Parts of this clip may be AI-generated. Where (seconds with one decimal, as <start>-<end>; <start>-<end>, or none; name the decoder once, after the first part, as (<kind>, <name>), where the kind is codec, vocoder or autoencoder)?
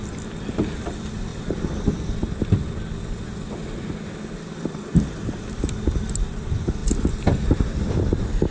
none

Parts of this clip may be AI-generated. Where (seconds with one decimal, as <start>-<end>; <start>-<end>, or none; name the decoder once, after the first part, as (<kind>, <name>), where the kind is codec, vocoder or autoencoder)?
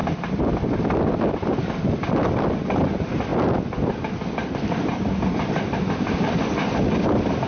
none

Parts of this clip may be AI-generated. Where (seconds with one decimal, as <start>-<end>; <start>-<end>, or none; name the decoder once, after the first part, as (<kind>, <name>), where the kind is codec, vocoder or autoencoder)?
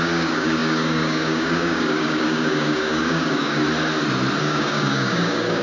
0.0-3.6 (codec, DAC); 4.4-5.6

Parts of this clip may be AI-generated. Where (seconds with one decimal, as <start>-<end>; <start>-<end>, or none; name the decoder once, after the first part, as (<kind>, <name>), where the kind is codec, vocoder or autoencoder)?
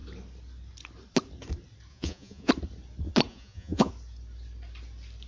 1.9-2.5 (vocoder, Vocos); 3.3-3.9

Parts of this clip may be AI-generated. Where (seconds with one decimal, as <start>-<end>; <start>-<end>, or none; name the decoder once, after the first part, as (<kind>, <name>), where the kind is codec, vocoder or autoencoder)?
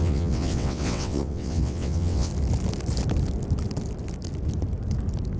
0.0-2.3 (vocoder, WaveNeXt)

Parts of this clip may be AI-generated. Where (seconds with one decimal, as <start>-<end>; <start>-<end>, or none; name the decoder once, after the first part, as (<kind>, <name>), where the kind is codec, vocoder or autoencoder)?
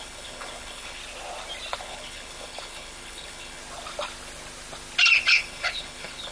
0.0-1.0 (codec, HILCodec); 1.8-3.6; 5.3-6.3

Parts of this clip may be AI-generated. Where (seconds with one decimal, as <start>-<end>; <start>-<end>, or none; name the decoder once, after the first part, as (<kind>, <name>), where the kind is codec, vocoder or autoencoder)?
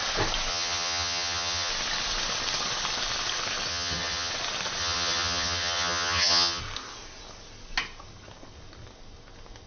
0.5-1.7 (vocoder, HiFi-GAN); 3.7-4.3; 4.8-6.6